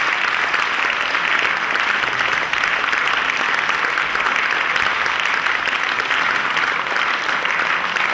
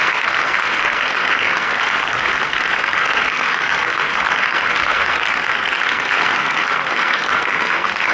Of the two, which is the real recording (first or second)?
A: first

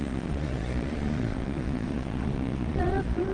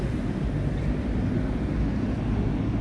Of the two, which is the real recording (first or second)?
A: second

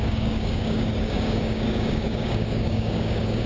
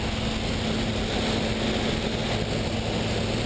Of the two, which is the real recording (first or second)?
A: second